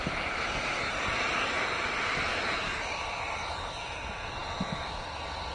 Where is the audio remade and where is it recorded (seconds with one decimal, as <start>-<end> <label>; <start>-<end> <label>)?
0.0-5.5 remade